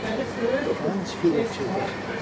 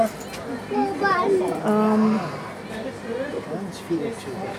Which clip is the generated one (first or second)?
first